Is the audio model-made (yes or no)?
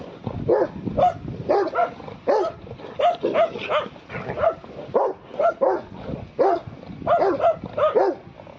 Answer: no